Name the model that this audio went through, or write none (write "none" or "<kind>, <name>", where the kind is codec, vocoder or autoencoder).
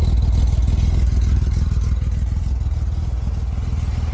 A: none